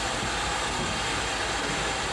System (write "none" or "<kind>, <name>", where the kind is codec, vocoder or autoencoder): none